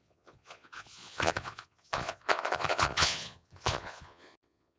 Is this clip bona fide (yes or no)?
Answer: no